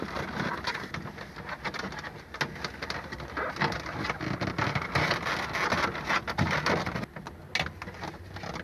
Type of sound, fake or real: real